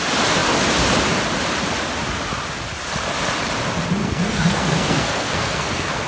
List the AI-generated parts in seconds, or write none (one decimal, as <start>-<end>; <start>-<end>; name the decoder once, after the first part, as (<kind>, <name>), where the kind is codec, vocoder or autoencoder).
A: 4.0-6.1 (codec, SNAC)